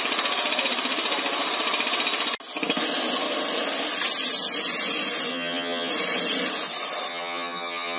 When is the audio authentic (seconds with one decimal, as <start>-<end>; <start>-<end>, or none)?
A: 0.0-5.3; 5.9-7.1